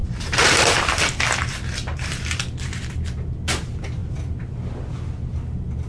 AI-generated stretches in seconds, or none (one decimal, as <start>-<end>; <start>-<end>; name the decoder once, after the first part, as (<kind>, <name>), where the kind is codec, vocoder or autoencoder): 0.0-1.0 (vocoder, BigVGAN v2)